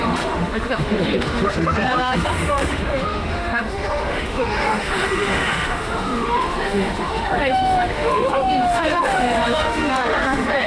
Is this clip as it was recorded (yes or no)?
no